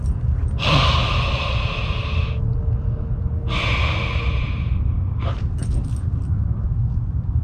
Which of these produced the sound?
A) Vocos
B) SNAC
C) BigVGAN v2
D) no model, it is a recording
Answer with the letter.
D